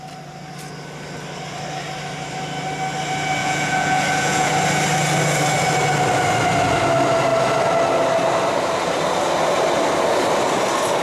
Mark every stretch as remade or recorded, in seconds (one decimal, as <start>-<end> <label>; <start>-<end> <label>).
0.0-3.4 recorded; 3.4-4.5 remade; 4.5-11.0 recorded